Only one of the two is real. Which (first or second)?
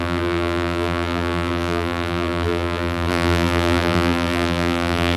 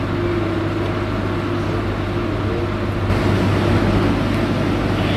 second